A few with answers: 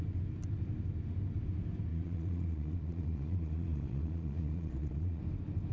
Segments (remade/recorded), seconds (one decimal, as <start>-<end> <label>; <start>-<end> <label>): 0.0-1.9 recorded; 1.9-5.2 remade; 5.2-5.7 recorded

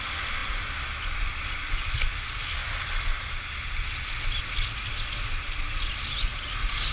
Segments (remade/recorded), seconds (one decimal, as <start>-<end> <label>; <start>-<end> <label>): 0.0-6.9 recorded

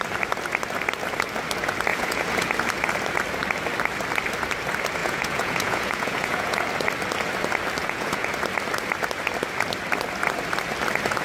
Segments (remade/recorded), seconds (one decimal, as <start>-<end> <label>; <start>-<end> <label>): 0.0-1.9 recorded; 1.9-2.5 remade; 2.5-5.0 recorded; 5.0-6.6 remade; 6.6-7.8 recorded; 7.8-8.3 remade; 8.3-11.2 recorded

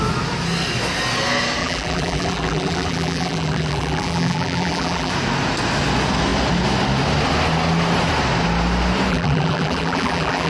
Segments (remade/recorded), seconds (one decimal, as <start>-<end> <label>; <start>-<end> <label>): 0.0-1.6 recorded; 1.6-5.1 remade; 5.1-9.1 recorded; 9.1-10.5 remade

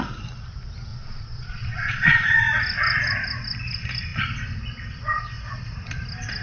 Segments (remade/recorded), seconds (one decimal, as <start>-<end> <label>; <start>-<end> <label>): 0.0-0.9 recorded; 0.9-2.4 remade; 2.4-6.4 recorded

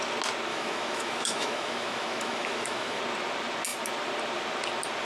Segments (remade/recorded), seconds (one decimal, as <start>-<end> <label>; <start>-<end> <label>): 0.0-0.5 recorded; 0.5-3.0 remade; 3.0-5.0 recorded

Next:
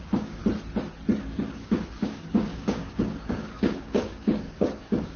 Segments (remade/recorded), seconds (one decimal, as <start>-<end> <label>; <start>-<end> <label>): 0.0-0.4 remade; 0.4-1.2 recorded; 1.2-5.2 remade

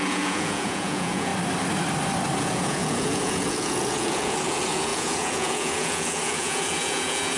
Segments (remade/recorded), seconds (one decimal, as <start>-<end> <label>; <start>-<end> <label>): 0.0-1.3 remade; 1.3-2.4 recorded; 2.4-7.4 remade